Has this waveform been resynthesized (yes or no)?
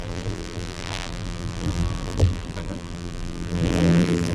yes